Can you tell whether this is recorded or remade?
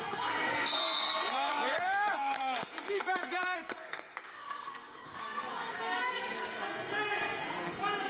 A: remade